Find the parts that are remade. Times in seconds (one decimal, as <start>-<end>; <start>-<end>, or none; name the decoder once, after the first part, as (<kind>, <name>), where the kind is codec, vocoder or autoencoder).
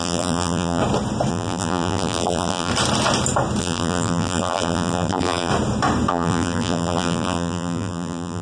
0.0-0.8 (vocoder, BigVGAN v2); 1.3-2.7; 3.6-5.5; 6.1-8.4